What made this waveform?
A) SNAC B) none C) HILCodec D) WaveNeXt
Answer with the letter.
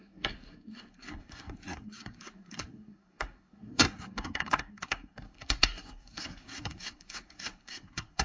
A